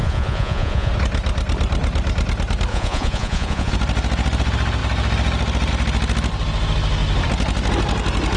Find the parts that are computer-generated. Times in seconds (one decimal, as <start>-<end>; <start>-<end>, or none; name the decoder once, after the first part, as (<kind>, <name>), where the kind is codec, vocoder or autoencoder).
0.0-0.9 (vocoder, Vocos); 2.7-3.7